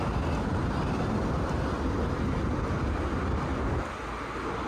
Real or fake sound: real